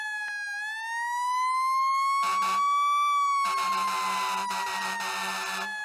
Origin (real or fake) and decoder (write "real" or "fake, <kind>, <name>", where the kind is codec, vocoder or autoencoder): real